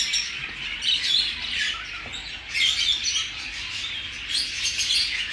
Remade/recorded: recorded